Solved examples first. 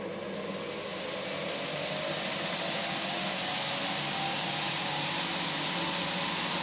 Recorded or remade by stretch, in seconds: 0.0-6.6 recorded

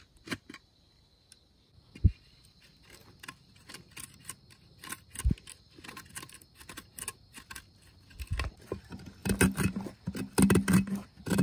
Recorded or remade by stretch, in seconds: 0.0-11.4 recorded